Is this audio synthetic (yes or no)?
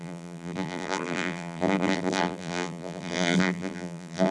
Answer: yes